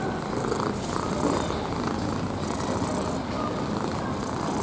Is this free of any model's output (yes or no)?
yes